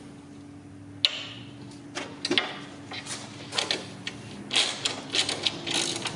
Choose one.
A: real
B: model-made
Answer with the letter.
A